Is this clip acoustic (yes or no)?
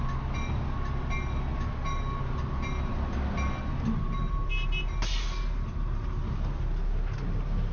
yes